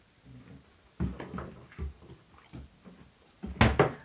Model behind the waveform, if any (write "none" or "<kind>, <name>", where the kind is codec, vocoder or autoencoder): none